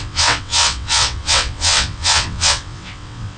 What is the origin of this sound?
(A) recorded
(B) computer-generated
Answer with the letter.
B